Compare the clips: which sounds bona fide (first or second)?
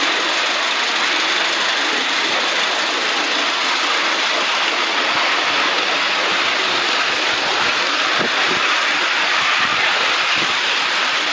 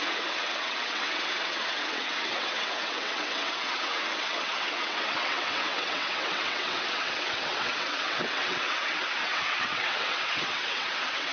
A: first